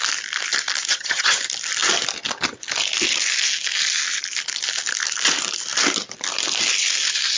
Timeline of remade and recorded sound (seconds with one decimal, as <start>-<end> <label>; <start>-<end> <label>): 0.0-0.9 recorded; 0.9-1.4 remade; 1.4-7.4 recorded